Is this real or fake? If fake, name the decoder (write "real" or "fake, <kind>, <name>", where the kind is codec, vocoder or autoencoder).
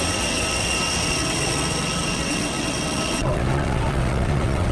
fake, vocoder, WaveNeXt